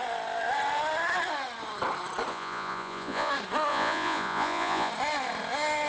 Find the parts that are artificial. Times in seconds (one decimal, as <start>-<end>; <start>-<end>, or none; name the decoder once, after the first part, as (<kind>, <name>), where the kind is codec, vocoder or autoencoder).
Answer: 2.3-3.3 (vocoder, Vocos); 3.7-4.9